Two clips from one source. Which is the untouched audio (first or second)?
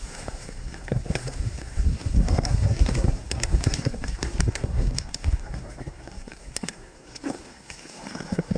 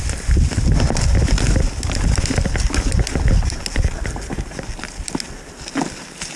second